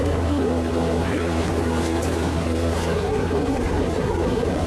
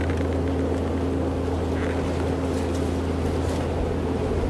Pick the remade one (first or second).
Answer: first